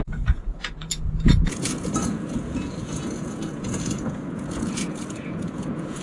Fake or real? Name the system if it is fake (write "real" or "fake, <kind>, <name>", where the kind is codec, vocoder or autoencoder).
fake, vocoder, Vocos